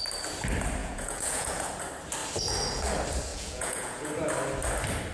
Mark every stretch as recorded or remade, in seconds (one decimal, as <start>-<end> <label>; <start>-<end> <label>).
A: 0.0-0.8 recorded; 0.8-1.7 remade; 1.7-3.3 recorded; 3.3-4.1 remade; 4.1-5.1 recorded